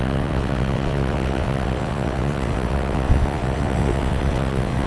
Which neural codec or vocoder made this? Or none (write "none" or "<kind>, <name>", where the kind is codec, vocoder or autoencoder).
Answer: vocoder, WaveNeXt